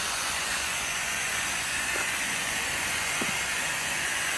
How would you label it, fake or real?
fake